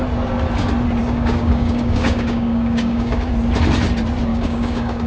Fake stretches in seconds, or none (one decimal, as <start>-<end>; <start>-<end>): 1.0-3.3; 4.3-5.1